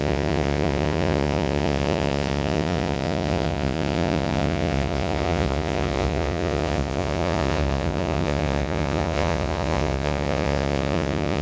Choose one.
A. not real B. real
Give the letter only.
A